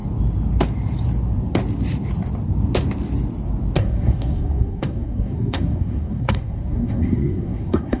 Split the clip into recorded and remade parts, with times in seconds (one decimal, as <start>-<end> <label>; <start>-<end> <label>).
0.0-3.8 recorded; 3.8-8.0 remade